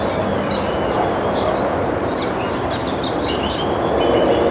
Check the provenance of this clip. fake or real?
real